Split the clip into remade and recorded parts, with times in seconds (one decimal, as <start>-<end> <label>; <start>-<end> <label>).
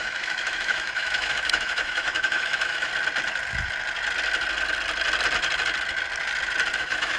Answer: 0.0-2.9 remade; 2.9-6.8 recorded; 6.8-7.2 remade